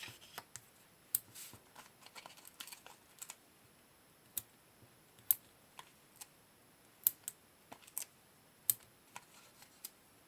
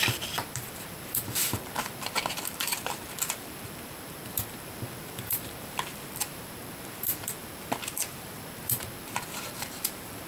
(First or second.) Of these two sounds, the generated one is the second